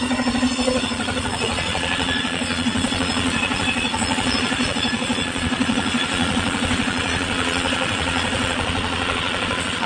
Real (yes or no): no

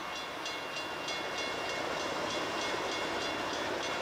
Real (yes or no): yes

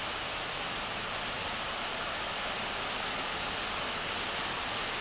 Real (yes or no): yes